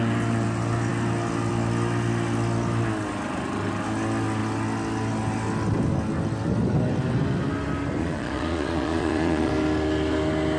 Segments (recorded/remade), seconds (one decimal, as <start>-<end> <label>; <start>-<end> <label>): 0.0-8.0 recorded; 8.0-9.5 remade; 9.5-10.6 recorded